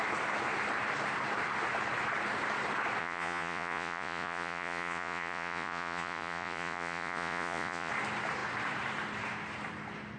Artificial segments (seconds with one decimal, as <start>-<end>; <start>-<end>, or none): 3.0-7.9